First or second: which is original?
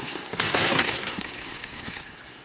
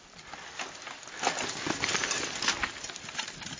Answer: second